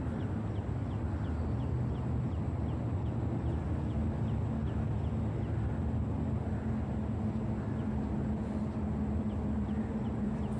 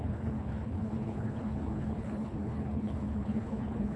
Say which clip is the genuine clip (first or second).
first